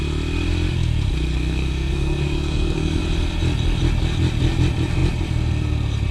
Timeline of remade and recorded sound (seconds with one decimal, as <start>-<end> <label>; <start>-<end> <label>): 0.0-1.3 recorded; 1.3-3.0 remade; 3.0-6.1 recorded